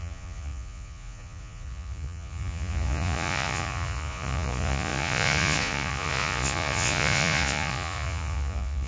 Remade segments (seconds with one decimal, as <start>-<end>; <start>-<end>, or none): 0.0-8.9